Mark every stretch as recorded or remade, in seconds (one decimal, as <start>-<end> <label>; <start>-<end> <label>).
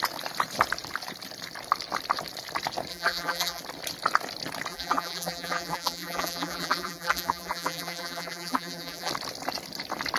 0.0-2.9 recorded; 2.9-3.6 remade; 3.6-4.7 recorded; 4.7-9.1 remade; 9.1-10.2 recorded